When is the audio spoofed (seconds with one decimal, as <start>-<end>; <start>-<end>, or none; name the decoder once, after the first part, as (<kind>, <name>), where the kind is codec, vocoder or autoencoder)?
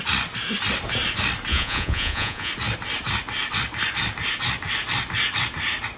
1.5-2.5 (vocoder, Vocos)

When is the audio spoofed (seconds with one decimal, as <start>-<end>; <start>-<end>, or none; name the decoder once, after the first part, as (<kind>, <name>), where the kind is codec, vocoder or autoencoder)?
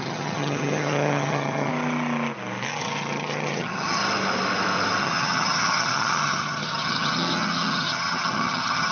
0.0-1.7 (vocoder, HiFi-GAN); 2.8-4.0; 5.0-8.9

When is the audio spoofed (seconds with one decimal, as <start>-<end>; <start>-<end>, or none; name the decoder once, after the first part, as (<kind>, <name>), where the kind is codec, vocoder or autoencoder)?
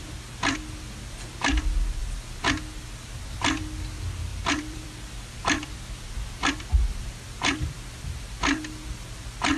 4.3-6.1 (vocoder, BigVGAN v2)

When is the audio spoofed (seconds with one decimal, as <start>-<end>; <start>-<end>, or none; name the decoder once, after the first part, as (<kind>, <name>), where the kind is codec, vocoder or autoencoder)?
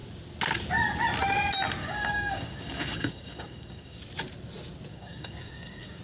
1.8-4.0 (codec, DAC); 4.9-6.0